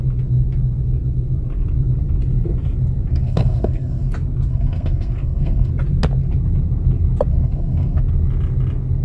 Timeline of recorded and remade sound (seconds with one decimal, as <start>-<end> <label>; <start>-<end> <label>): 0.0-3.1 recorded; 3.1-4.1 remade; 4.1-4.5 recorded; 4.5-5.7 remade; 5.7-7.3 recorded; 7.3-8.0 remade; 8.0-9.0 recorded